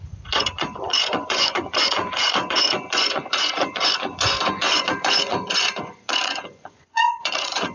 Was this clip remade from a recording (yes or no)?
yes